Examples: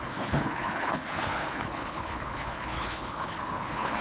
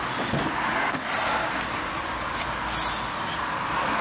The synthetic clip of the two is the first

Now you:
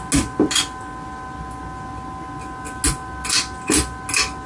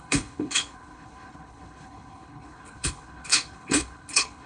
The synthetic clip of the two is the second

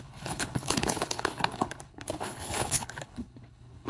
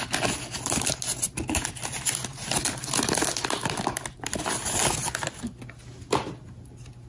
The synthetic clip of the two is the first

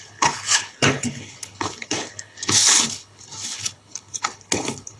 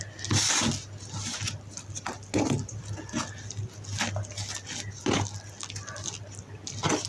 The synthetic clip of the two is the first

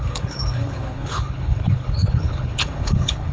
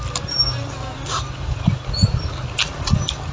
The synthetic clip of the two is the first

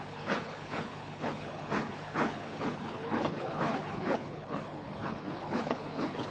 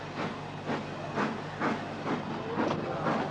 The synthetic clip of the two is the first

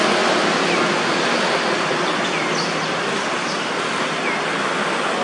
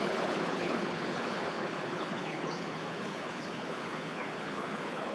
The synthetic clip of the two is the second